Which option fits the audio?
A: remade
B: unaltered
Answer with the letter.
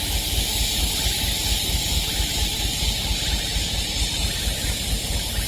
B